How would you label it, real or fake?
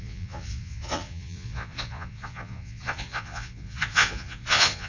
fake